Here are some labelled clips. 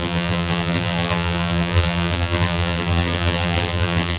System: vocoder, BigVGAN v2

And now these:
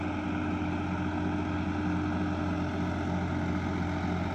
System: none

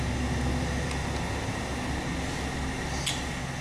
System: none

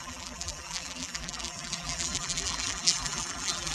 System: vocoder, BigVGAN v2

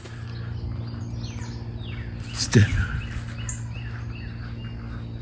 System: none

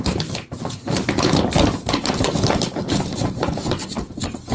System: none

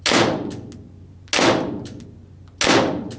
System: none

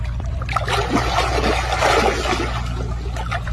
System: none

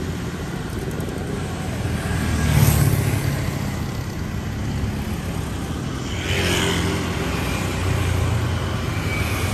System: none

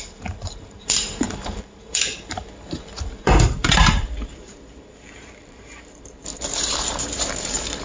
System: vocoder, BigVGAN v2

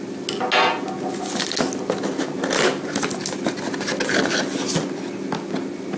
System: none